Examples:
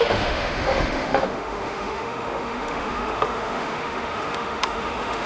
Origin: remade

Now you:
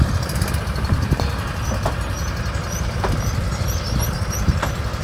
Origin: recorded